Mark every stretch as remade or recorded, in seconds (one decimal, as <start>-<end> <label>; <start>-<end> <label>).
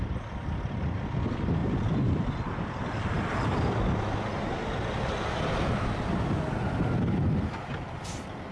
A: 0.0-8.5 recorded